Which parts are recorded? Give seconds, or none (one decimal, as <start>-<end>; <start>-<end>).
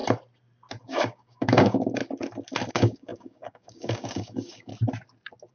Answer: 0.0-0.8; 2.0-2.7; 4.7-5.5